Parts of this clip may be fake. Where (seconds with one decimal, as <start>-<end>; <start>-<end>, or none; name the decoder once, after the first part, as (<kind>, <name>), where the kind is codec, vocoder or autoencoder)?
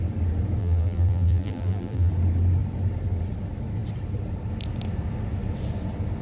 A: 0.6-2.1 (vocoder, BigVGAN v2)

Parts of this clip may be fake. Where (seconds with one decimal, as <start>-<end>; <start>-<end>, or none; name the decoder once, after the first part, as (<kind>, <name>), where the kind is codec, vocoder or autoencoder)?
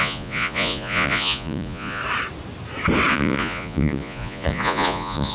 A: 0.0-2.0 (vocoder, Vocos); 3.1-5.3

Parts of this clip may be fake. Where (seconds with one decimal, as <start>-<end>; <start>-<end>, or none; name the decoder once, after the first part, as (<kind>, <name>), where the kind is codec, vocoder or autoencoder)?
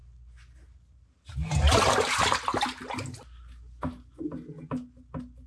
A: none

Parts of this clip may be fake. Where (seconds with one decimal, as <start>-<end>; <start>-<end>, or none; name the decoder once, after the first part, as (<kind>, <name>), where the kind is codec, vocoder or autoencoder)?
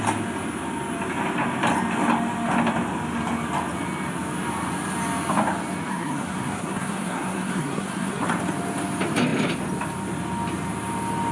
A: 5.9-8.2 (codec, SNAC)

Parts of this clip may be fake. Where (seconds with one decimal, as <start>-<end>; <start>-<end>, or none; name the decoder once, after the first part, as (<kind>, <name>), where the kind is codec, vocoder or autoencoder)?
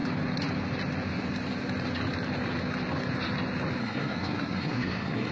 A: 3.8-5.3 (codec, SNAC)